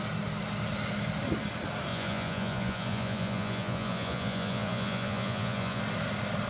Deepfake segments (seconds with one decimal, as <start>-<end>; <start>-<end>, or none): 1.9-5.8